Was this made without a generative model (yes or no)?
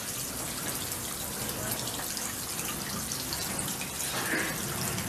yes